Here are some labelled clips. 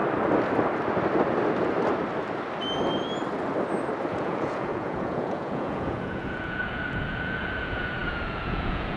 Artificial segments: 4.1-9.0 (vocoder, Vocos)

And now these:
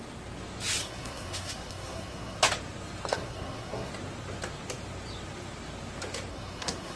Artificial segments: 0.8-2.4 (codec, SNAC); 3.1-3.9; 6.3-7.0

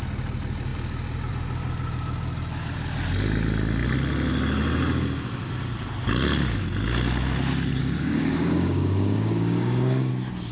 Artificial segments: 7.8-10.1 (codec, DAC)

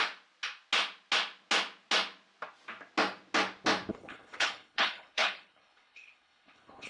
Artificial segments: 3.9-6.9 (codec, HILCodec)

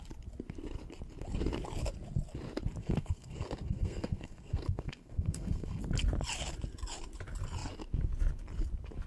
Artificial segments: 2.8-5.8 (codec, SNAC)

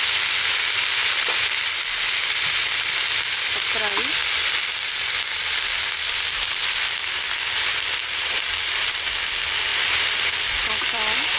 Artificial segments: 1.0-1.7 (vocoder, BigVGAN v2); 8.0-8.8; 9.7-11.4

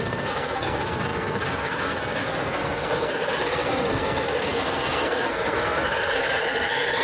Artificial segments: 0.0-7.0 (codec, SNAC)

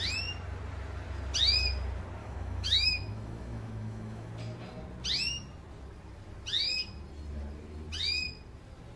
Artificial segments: 2.2-4.3 (autoencoder, DAC-VAE)